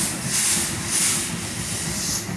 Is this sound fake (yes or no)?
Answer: no